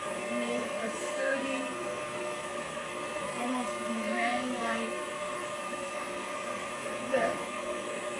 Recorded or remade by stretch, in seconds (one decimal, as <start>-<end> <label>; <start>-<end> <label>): 0.0-8.2 remade